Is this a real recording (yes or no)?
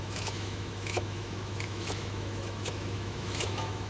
no